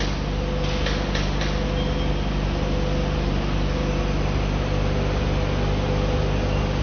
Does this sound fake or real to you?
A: real